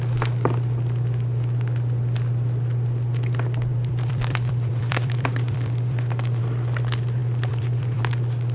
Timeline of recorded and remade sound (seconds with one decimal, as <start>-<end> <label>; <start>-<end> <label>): 0.0-3.7 recorded; 3.7-6.4 remade; 6.4-7.2 recorded; 7.2-8.0 remade; 8.0-8.5 recorded